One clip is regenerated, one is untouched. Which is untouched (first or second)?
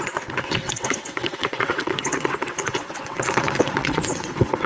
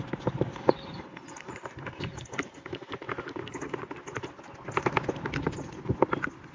second